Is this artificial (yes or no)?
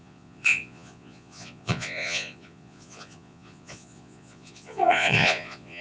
yes